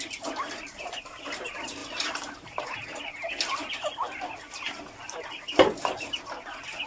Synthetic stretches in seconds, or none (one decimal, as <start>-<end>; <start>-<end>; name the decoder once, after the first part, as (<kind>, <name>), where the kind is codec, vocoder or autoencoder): 1.8-2.6 (vocoder, BigVGAN v2); 4.0-4.7